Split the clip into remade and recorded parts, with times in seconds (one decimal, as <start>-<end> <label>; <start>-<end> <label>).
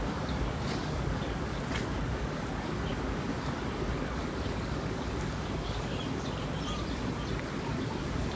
0.0-5.9 remade; 5.9-7.6 recorded; 7.6-8.4 remade